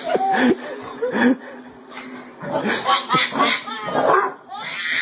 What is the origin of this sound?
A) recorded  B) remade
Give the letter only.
A